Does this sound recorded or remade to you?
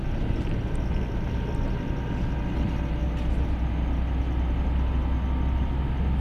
recorded